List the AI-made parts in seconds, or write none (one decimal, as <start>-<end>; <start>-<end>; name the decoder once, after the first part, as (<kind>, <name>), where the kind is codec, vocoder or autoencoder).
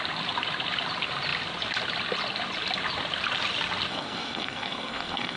3.9-5.4 (codec, SNAC)